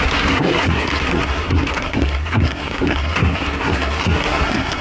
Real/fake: fake